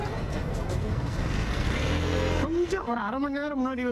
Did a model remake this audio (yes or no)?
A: yes